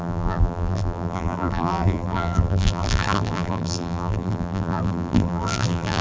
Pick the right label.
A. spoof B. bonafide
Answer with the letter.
A